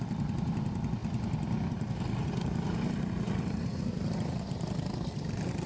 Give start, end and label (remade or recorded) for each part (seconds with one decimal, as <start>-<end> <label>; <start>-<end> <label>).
0.0-5.7 recorded